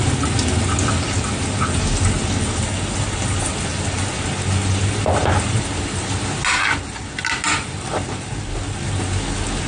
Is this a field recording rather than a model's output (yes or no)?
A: yes